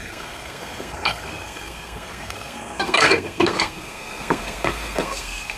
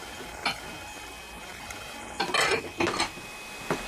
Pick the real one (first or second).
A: second